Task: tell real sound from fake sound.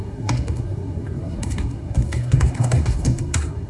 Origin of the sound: fake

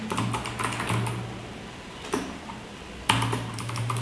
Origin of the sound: real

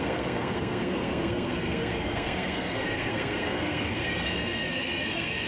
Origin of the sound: fake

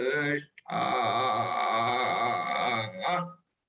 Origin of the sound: real